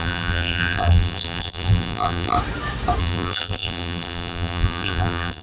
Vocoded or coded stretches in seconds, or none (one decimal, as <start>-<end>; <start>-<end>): 0.0-2.3; 3.0-5.4